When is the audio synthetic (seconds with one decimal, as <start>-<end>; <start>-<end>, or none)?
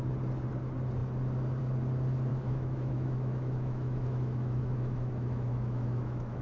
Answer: 2.3-6.4